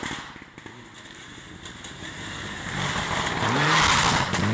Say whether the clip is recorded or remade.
recorded